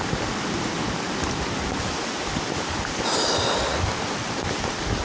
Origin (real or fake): real